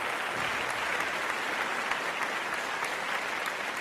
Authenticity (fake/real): real